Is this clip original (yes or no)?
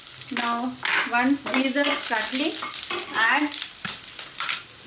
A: yes